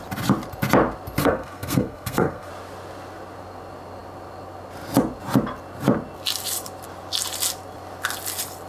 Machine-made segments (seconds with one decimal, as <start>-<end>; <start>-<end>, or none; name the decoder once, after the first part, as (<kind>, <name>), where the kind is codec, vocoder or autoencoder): 1.2-2.5 (codec, SNAC)